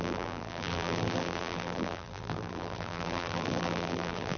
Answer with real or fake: fake